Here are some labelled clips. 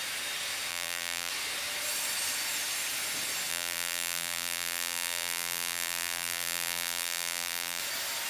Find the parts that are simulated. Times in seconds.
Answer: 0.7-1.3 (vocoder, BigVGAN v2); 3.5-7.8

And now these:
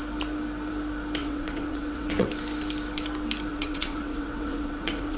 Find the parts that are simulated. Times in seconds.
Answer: 1.2-2.3 (vocoder, WaveNeXt); 3.5-5.2

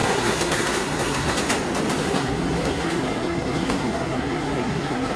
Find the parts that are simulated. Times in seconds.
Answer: 0.0-1.4 (codec, SNAC); 2.0-5.2

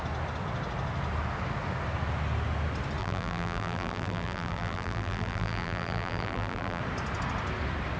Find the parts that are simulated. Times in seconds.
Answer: 3.0-6.8 (vocoder, BigVGAN v2)